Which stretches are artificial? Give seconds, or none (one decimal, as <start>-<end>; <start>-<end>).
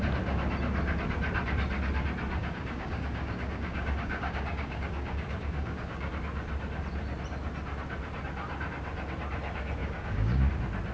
2.4-6.1; 9.8-10.5